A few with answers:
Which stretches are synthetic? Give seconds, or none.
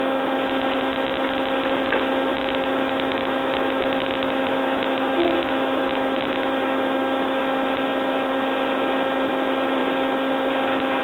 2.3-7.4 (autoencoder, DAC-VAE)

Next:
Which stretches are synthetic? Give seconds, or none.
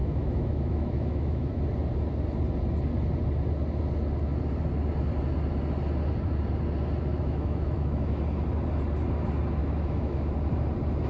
0.0-1.6 (autoencoder, DAC-VAE); 7.1-8.2; 9.6-10.3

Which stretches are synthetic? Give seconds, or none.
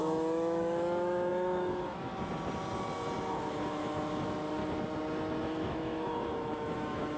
0.0-2.1 (autoencoder, DAC-VAE); 3.3-4.6; 5.4-7.2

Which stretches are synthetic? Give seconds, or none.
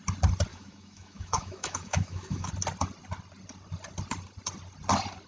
0.5-2.5 (autoencoder, DAC-VAE)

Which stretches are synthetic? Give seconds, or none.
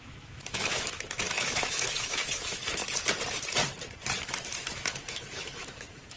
0.0-2.8 (autoencoder, DAC-VAE); 4.5-6.2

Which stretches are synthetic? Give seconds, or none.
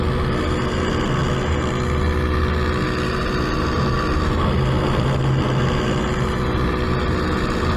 none